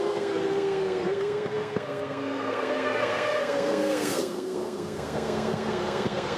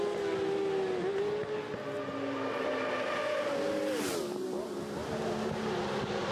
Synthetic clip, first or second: first